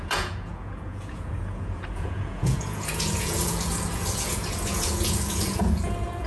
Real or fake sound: fake